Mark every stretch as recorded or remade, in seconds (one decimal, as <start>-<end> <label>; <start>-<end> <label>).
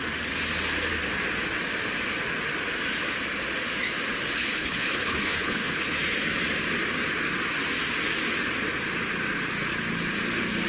0.0-4.4 recorded; 4.4-6.0 remade; 6.0-10.7 recorded